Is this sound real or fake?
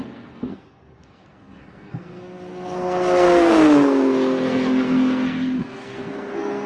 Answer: fake